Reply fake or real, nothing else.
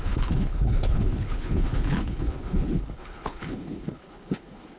fake